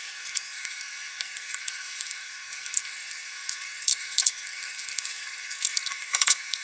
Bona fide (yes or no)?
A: no